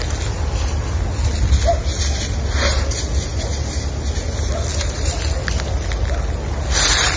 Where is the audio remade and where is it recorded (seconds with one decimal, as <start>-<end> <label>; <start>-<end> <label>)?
0.0-7.2 recorded

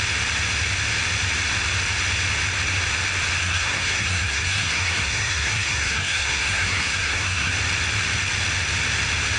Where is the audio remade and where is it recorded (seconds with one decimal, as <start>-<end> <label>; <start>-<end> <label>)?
0.0-3.4 recorded; 3.4-7.5 remade; 7.5-9.4 recorded

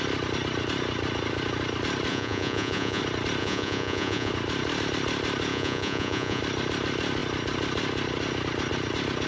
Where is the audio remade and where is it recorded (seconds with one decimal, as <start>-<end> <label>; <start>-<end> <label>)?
0.0-2.1 recorded; 2.1-3.0 remade; 3.0-3.4 recorded; 3.4-4.3 remade; 4.3-5.5 recorded; 5.5-6.4 remade; 6.4-9.3 recorded